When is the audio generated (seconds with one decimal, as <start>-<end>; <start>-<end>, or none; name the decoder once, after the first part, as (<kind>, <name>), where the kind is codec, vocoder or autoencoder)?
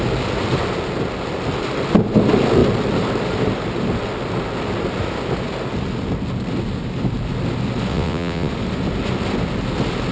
7.9-8.5 (vocoder, WaveNeXt)